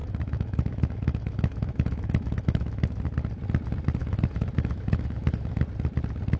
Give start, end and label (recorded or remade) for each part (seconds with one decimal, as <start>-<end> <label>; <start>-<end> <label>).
0.0-3.0 remade; 3.0-4.0 recorded; 4.0-5.6 remade; 5.6-6.4 recorded